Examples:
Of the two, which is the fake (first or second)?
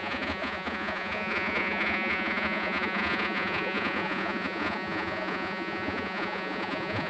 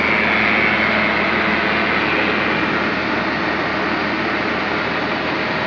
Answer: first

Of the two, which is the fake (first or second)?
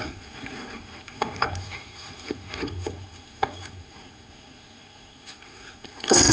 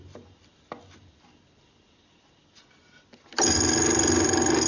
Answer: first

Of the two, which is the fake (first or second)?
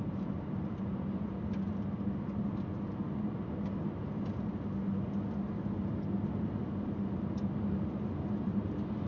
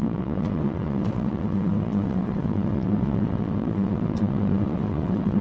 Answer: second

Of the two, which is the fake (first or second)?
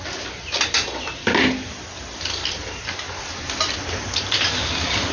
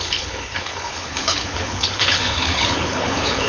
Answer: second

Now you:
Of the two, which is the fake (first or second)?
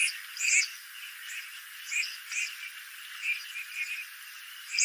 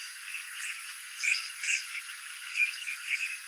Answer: second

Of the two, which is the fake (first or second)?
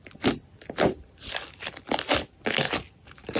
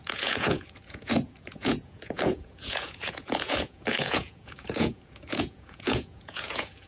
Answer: second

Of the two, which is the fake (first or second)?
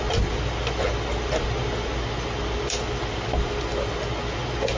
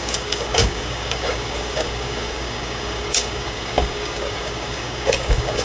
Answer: second